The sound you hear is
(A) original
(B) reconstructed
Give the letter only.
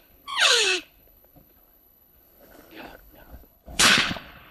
B